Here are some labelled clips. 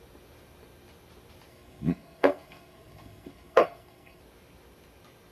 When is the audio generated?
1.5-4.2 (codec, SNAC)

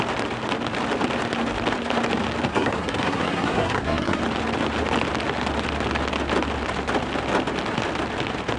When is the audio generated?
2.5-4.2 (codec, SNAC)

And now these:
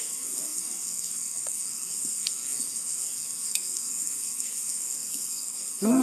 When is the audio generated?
0.0-6.0 (codec, SNAC)

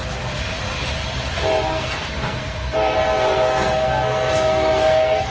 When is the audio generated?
1.7-5.3 (codec, SNAC)